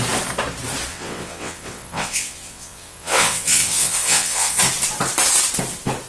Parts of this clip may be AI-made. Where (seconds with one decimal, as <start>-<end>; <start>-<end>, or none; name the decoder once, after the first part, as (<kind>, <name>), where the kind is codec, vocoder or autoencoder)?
0.9-4.6 (vocoder, WaveNeXt)